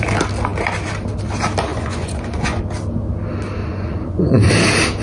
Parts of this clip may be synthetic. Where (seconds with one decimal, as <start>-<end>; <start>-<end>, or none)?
1.7-2.6; 3.6-4.5